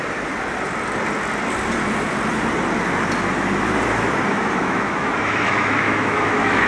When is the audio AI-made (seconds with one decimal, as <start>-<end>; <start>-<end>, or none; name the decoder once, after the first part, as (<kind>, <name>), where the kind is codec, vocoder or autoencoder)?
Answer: 4.3-6.7 (autoencoder, DAC-VAE)